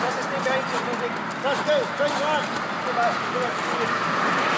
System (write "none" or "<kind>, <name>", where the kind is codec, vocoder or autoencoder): none